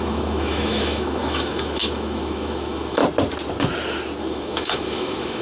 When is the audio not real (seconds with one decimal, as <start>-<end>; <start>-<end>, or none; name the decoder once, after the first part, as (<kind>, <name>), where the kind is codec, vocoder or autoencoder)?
0.0-3.0 (autoencoder, DAC-VAE); 4.2-5.4